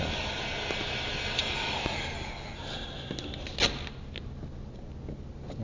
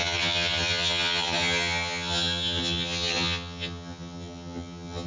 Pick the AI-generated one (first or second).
second